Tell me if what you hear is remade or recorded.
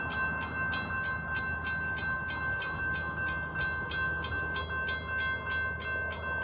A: recorded